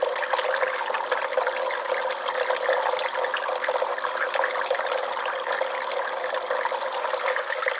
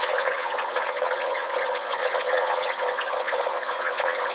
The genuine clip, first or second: first